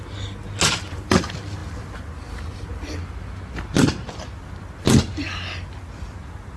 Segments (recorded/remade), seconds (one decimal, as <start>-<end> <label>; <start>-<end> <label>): 0.0-6.6 recorded